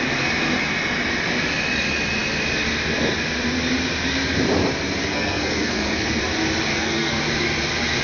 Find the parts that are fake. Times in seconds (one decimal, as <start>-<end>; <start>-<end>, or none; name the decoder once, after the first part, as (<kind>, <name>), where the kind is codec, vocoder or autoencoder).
5.0-6.2 (codec, SNAC); 6.7-7.2

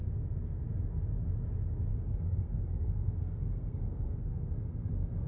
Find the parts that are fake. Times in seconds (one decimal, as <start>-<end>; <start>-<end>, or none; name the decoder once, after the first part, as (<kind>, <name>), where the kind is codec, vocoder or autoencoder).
1.9-5.3 (codec, SNAC)

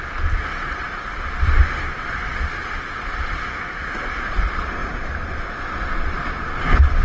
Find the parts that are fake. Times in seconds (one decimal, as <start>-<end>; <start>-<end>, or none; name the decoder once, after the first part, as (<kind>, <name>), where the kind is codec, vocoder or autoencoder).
none

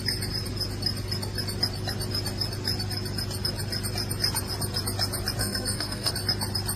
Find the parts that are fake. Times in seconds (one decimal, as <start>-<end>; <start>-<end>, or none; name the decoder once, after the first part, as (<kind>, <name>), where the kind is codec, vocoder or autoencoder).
5.4-6.1 (codec, SNAC)

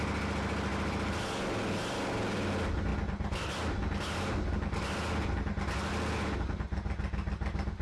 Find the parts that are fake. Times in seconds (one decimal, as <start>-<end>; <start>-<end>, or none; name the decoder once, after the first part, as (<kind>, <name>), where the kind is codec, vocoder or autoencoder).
none

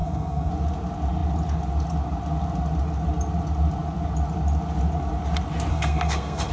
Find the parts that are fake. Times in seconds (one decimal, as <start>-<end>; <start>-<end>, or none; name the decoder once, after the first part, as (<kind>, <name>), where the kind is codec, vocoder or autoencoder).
0.0-0.5 (codec, SNAC); 5.7-6.5

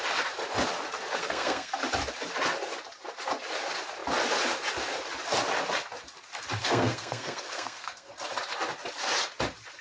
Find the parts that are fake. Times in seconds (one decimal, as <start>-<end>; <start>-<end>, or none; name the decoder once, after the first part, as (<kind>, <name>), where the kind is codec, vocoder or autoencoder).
1.2-1.7 (codec, SNAC); 6.6-8.1

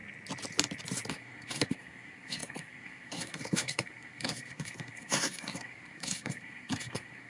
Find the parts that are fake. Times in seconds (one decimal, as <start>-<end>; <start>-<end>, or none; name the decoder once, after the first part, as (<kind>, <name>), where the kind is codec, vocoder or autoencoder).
1.1-7.3 (codec, SNAC)